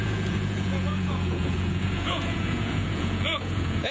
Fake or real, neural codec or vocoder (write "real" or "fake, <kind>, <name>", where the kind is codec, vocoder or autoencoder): fake, vocoder, Vocos